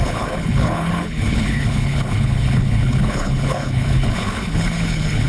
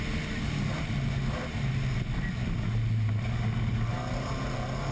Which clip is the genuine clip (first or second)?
second